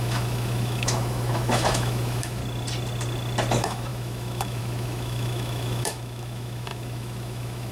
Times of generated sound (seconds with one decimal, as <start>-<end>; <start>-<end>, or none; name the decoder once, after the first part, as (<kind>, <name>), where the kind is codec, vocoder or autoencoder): 0.0-2.4 (autoencoder, DAC-VAE); 3.5-7.7